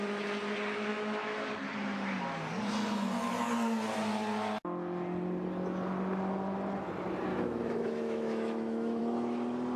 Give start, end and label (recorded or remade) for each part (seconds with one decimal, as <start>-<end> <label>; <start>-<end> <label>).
0.0-0.9 recorded; 0.9-1.5 remade; 1.5-7.3 recorded; 7.3-9.0 remade; 9.0-9.8 recorded

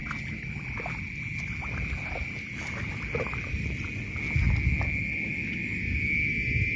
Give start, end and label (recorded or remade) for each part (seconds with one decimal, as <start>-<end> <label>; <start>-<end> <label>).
0.0-6.8 recorded